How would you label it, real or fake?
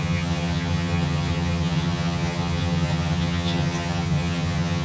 fake